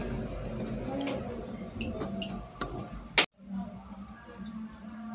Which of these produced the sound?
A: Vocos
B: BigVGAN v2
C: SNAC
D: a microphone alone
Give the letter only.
D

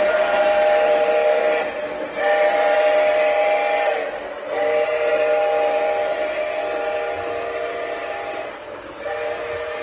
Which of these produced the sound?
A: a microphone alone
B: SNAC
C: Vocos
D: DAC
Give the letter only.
A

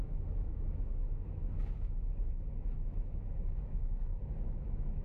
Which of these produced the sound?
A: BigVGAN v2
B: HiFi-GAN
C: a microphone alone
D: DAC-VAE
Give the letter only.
D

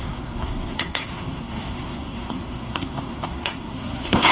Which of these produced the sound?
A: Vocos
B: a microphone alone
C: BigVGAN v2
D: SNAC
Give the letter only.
D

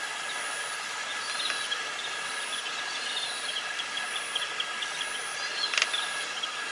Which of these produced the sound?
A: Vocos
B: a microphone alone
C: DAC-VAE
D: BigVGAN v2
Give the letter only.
B